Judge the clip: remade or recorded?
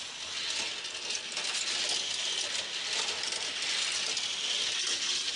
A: recorded